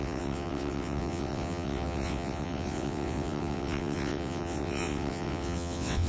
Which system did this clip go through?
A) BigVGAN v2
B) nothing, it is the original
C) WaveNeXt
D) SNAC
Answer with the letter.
C